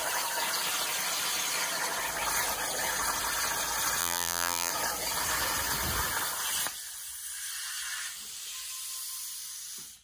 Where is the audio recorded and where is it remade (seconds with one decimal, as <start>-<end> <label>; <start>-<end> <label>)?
0.0-4.0 recorded; 4.0-4.7 remade; 4.7-10.0 recorded

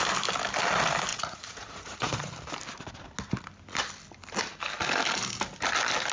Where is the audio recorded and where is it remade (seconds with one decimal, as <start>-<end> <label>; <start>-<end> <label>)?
0.0-1.1 recorded; 1.1-2.3 remade; 2.3-6.1 recorded